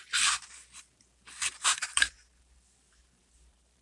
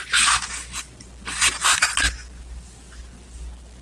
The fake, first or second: first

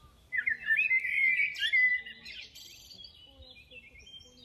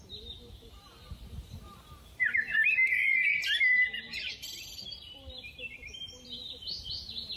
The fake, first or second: second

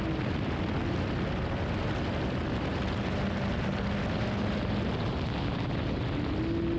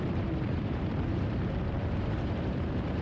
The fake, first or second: second